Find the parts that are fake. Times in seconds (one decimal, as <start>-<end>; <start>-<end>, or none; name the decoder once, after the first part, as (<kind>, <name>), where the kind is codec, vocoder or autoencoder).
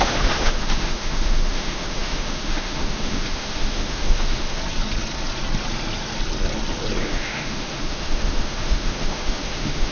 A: 0.0-4.6 (autoencoder, DAC-VAE); 7.0-9.9